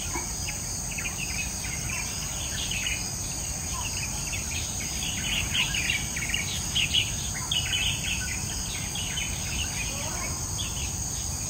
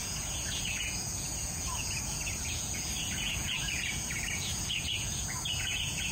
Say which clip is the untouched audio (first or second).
first